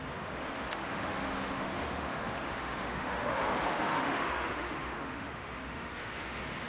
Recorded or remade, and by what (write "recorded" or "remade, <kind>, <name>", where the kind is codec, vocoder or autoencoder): remade, autoencoder, DAC-VAE